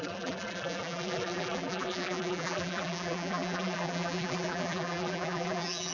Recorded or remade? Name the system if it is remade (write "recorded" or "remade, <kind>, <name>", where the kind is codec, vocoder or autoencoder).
remade, vocoder, BigVGAN v2